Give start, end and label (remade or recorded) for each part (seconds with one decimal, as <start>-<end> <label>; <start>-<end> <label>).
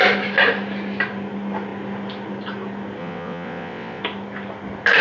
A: 0.0-3.0 recorded; 3.0-4.0 remade; 4.0-5.0 recorded